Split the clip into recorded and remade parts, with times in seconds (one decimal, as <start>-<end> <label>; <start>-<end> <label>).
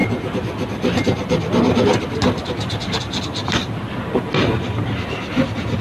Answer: 0.0-3.0 remade; 3.0-3.4 recorded; 3.4-5.0 remade; 5.0-5.8 recorded